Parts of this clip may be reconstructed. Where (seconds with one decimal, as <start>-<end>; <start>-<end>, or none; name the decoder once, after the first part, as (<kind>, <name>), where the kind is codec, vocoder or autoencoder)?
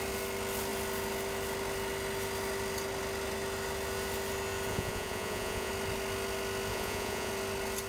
4.7-5.7 (vocoder, Vocos); 6.7-7.3